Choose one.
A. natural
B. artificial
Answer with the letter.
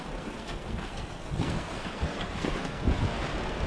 B